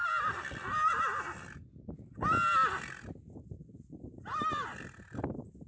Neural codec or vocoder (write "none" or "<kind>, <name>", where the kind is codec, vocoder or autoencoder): none